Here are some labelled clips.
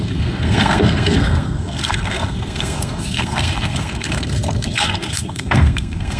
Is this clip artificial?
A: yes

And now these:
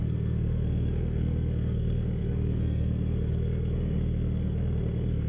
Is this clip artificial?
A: yes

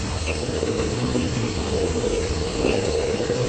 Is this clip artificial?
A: yes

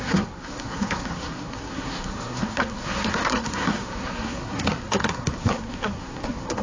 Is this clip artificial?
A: yes